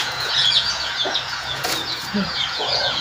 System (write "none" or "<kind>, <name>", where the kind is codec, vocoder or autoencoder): vocoder, Vocos